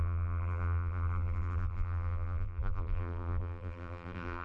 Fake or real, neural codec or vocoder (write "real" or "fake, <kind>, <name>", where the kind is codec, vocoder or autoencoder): fake, vocoder, BigVGAN v2